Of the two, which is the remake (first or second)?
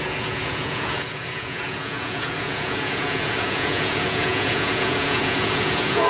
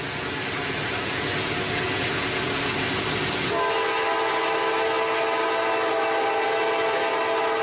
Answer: first